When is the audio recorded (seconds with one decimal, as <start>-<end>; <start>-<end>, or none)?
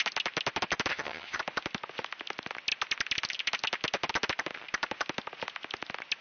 0.0-0.9; 1.4-6.2